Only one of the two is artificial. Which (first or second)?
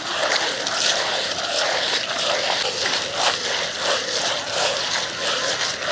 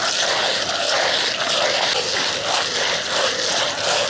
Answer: first